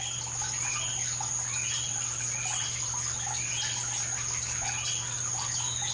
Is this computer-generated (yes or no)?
no